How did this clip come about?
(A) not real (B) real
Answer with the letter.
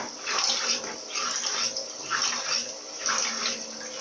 B